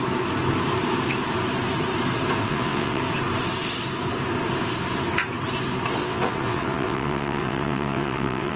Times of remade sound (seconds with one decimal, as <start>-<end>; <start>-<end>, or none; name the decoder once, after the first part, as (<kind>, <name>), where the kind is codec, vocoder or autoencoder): 2.4-3.0 (vocoder, WaveNeXt); 6.0-8.6